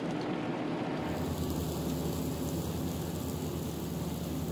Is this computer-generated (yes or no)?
no